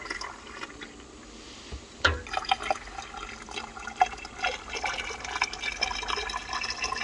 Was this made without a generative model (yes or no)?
yes